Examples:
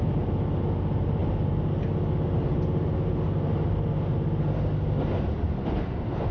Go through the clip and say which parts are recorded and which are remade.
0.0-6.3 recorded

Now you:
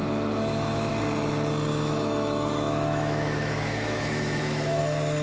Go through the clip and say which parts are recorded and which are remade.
0.0-0.9 remade; 0.9-1.7 recorded; 1.7-4.8 remade; 4.8-5.2 recorded

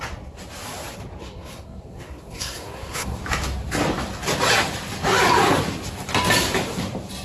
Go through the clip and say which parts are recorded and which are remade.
0.0-1.2 recorded; 1.2-3.2 remade; 3.2-7.2 recorded

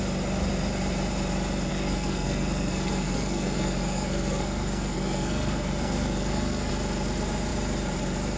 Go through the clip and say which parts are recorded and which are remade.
0.0-1.7 recorded; 1.7-6.7 remade; 6.7-8.4 recorded

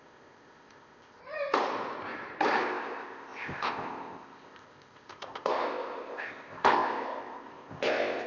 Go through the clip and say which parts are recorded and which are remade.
0.0-1.2 remade; 1.2-2.6 recorded; 2.6-8.3 remade

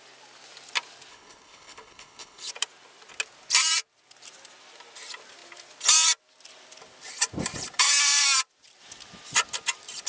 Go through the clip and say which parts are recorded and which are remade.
0.0-1.1 recorded; 1.1-2.5 remade; 2.5-10.1 recorded

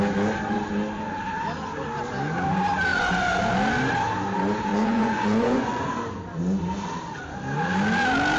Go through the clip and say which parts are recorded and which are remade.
0.0-2.9 recorded; 2.9-3.4 remade; 3.4-4.7 recorded; 4.7-5.8 remade; 5.8-8.4 recorded